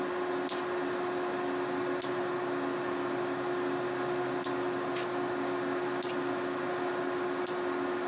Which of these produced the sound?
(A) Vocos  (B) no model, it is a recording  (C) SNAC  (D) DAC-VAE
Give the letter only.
B